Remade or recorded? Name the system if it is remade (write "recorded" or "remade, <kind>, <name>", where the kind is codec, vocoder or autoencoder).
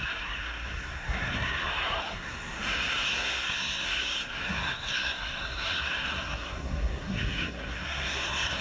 remade, codec, SNAC